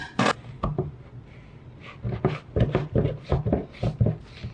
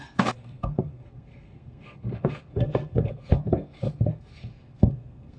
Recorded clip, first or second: first